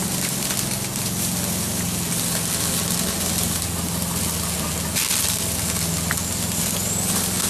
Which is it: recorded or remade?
recorded